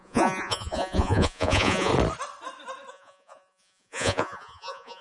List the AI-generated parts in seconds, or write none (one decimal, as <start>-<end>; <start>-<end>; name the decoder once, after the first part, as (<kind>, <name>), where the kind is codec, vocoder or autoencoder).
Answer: 0.0-1.9 (vocoder, Vocos); 2.9-5.0